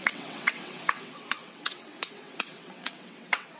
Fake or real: fake